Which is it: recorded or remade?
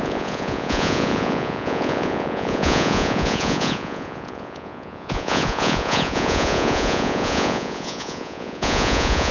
remade